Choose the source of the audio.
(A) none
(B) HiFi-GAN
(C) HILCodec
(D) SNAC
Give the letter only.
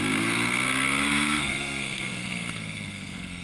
D